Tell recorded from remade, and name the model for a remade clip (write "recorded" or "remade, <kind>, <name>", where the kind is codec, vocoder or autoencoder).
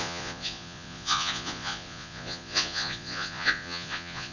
remade, vocoder, Vocos